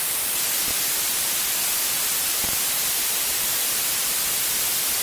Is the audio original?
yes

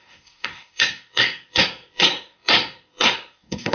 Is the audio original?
no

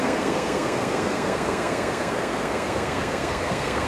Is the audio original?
no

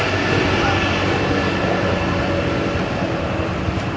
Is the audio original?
yes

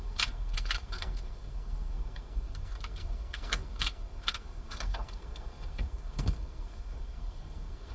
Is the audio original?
no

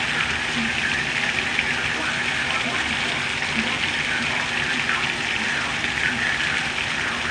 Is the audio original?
yes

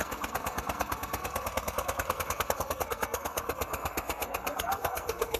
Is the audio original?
no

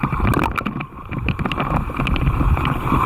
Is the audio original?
yes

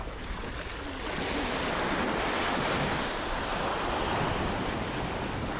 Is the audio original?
yes